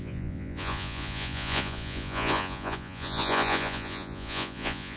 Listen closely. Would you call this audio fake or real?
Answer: fake